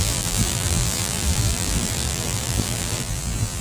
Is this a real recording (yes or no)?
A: no